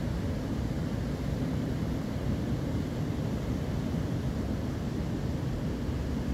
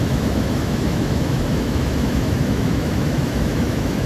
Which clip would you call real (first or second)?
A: first